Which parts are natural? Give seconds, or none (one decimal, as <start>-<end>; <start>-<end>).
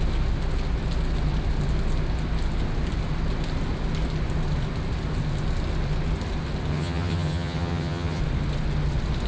0.0-6.7; 8.2-9.3